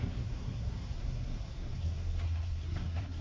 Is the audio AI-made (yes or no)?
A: yes